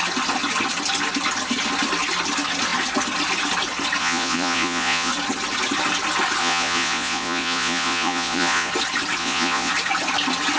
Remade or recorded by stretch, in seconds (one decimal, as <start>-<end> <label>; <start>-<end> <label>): 0.0-4.0 recorded; 4.0-5.1 remade; 5.1-6.4 recorded; 6.4-8.7 remade; 8.7-9.2 recorded; 9.2-9.7 remade; 9.7-10.6 recorded